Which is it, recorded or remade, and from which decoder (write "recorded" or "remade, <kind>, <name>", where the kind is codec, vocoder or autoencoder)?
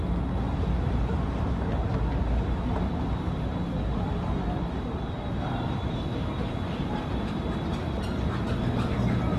recorded